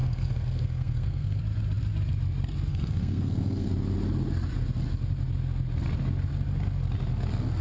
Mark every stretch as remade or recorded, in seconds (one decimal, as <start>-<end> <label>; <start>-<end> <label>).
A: 0.0-1.4 remade; 1.4-2.7 recorded; 2.7-3.7 remade; 3.7-7.6 recorded